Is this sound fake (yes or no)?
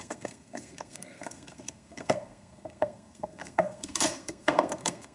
yes